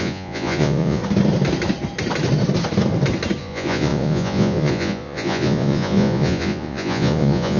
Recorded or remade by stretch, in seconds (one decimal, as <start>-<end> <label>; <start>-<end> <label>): 0.0-1.0 remade; 1.0-3.4 recorded; 3.4-7.6 remade